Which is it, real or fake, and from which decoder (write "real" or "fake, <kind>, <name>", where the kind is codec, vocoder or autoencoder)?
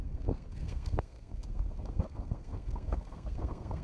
fake, codec, SNAC